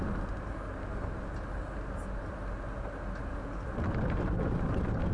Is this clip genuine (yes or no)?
yes